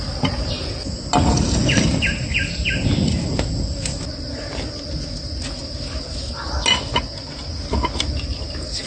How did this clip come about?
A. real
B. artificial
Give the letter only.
A